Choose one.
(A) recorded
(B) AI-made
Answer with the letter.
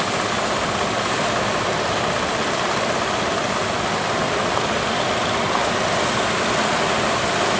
A